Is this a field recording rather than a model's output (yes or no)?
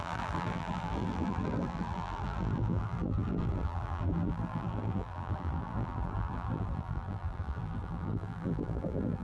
no